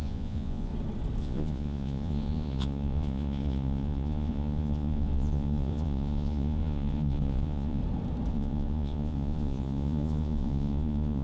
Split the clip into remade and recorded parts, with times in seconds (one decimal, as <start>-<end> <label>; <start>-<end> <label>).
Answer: 0.0-0.7 remade; 0.7-1.2 recorded; 1.2-7.8 remade; 7.8-8.3 recorded; 8.3-11.2 remade